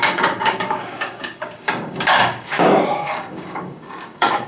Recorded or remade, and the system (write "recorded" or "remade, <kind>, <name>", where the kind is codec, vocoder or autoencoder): remade, codec, DAC